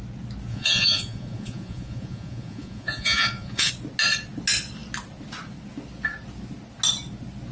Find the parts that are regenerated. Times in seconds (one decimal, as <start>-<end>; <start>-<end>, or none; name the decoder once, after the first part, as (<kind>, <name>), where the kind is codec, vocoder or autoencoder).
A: 0.5-3.7 (vocoder, Vocos)